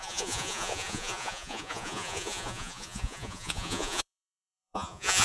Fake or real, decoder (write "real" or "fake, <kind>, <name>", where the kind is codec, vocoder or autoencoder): fake, vocoder, Vocos